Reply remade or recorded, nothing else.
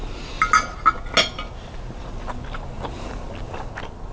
recorded